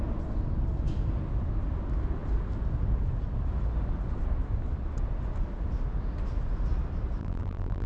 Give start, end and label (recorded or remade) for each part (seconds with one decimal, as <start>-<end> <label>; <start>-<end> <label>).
0.0-7.2 recorded; 7.2-7.9 remade